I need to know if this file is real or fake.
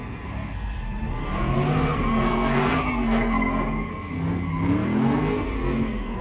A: fake